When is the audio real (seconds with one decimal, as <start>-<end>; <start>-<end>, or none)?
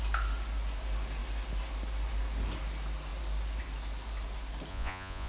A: 0.0-4.7